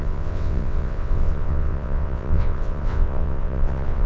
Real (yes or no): no